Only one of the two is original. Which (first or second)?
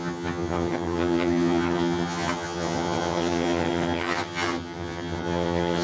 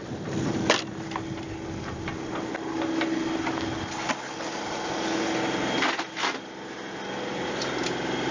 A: second